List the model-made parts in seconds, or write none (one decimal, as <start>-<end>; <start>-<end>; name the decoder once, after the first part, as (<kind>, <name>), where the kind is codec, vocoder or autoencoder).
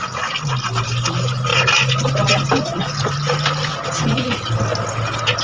none